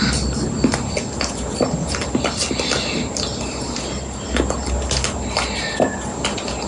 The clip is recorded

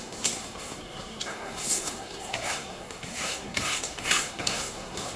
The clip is remade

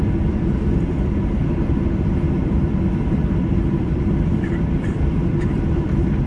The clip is remade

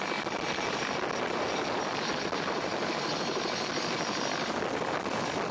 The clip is recorded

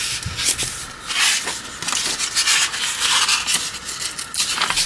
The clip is recorded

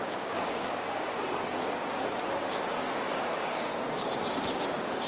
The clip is remade